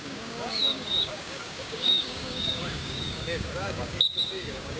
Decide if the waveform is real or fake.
fake